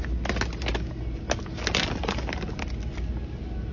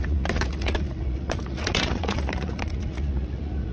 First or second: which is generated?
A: second